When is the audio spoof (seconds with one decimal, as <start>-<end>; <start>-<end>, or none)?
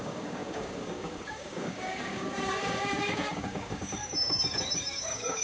0.0-5.4